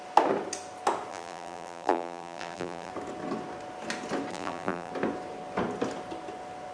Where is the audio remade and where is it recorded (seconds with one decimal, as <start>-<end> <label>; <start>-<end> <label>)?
0.0-1.1 recorded; 1.1-2.9 remade; 2.9-4.3 recorded; 4.3-4.9 remade; 4.9-6.7 recorded